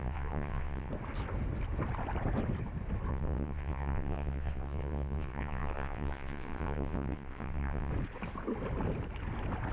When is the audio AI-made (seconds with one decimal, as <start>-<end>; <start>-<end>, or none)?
0.0-0.9; 3.1-7.9